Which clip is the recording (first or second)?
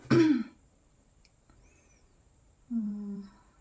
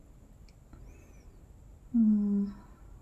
second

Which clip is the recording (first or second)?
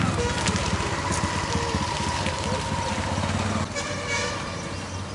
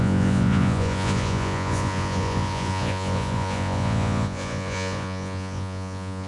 first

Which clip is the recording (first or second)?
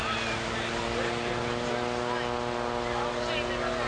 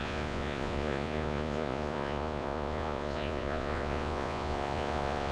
first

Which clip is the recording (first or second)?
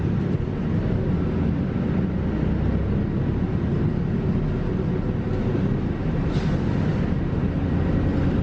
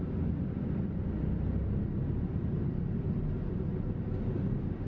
first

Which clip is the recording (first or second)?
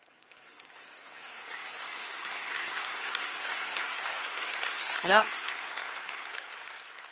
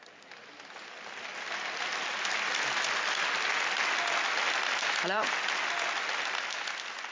second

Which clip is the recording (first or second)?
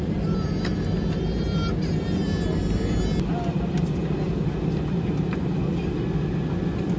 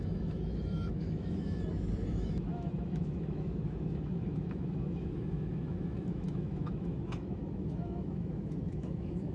first